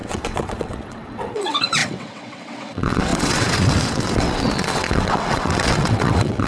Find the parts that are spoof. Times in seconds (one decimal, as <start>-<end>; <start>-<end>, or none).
0.0-6.5

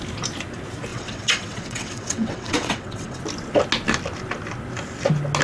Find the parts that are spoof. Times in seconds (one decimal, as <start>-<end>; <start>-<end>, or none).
0.9-3.2

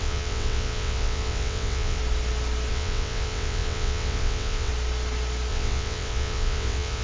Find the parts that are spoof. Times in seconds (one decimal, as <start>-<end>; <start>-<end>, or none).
0.0-2.0; 2.7-4.7; 5.5-7.0

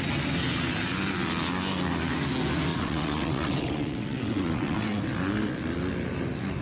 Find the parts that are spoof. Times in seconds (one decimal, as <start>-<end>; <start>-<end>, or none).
2.7-5.0

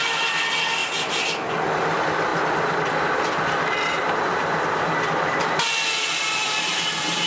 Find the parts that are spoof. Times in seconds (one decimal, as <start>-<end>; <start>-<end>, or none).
none